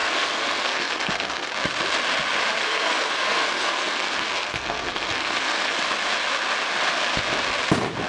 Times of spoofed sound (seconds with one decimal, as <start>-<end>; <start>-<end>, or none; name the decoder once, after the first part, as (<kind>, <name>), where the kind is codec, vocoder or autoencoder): 0.0-1.5 (codec, SNAC); 2.6-5.8